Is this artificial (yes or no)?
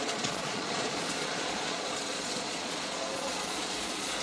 yes